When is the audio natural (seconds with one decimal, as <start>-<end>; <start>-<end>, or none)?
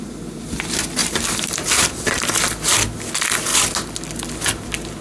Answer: 0.0-1.0; 2.2-5.0